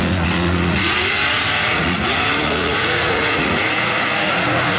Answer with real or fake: fake